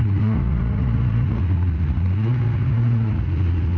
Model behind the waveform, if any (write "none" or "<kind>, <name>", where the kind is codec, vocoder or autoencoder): vocoder, Vocos